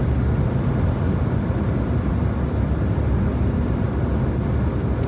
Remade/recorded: recorded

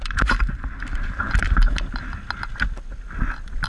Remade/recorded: recorded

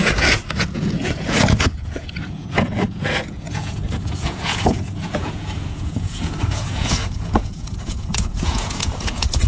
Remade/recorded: remade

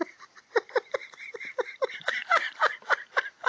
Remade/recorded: remade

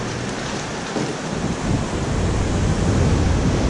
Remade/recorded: recorded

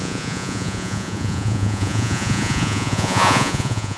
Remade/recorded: remade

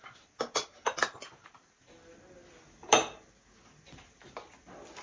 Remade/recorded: recorded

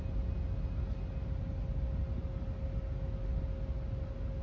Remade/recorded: recorded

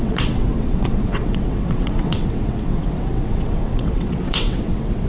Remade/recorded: remade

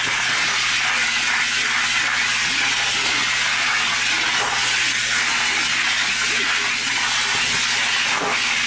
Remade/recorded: recorded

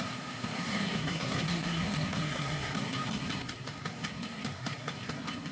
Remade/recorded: remade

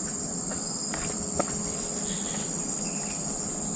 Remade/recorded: recorded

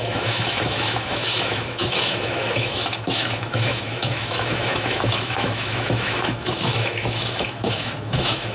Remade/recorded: remade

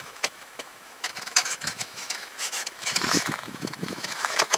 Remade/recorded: remade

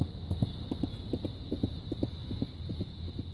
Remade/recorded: recorded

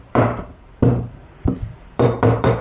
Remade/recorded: remade